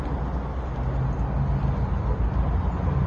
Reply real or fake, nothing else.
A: real